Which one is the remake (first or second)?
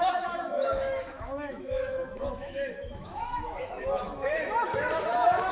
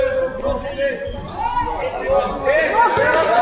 first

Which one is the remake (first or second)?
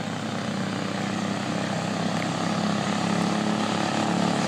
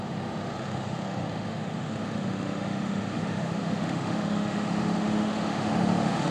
second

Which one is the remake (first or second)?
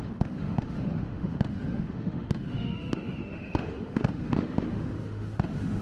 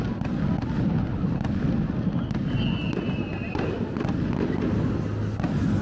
first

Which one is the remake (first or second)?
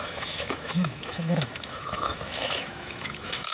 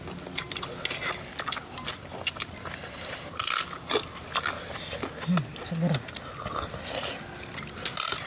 first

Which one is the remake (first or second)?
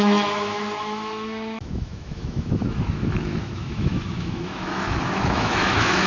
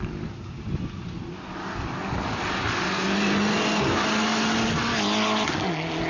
first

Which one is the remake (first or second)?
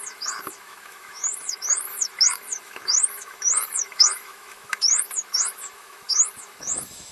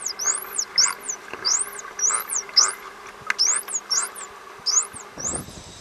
first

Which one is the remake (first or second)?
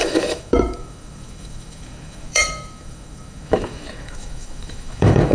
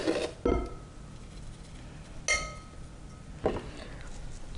first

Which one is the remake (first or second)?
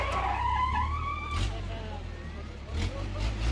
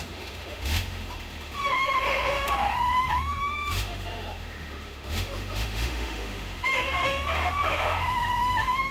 second